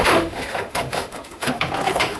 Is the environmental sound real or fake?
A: fake